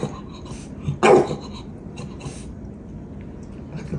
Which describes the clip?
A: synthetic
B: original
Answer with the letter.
B